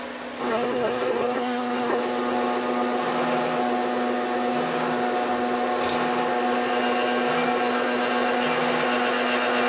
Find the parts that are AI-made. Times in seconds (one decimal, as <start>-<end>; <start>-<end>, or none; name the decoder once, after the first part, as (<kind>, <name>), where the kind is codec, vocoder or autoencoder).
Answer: 0.5-2.0 (codec, SNAC)